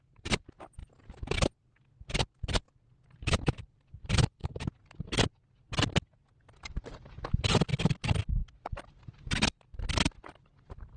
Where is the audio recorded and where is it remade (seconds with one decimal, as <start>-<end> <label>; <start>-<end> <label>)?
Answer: 0.0-0.9 remade; 0.9-3.3 recorded; 3.3-4.4 remade; 4.4-6.9 recorded; 6.9-11.0 remade